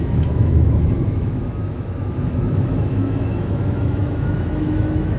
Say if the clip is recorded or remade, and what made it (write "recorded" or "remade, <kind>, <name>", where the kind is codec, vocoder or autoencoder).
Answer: remade, autoencoder, DAC-VAE